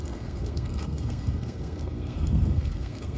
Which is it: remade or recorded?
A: remade